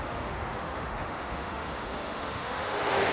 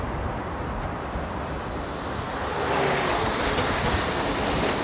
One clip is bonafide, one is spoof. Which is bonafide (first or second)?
second